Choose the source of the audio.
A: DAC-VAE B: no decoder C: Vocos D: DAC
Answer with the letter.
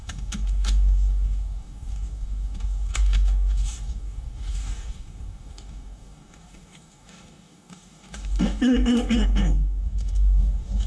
D